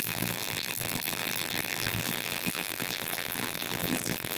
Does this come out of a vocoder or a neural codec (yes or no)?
yes